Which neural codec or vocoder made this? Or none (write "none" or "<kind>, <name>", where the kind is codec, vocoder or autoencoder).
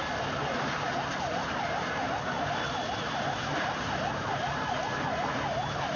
none